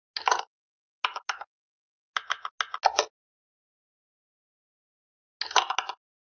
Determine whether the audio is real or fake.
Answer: real